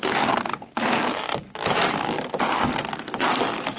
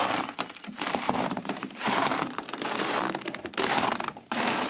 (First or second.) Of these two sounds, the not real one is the second